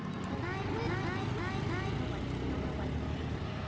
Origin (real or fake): real